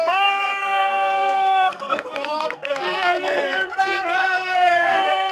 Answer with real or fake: fake